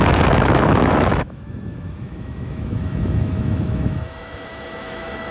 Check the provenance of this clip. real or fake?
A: fake